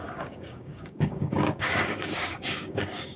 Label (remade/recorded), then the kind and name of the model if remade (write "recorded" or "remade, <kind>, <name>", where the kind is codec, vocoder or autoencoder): remade, codec, DAC